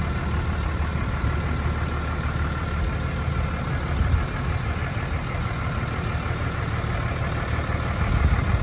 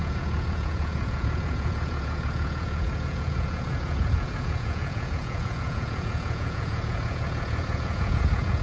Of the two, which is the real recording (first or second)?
first